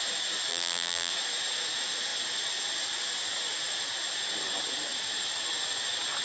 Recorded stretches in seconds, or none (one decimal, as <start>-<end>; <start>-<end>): 0.0-0.5; 1.1-6.2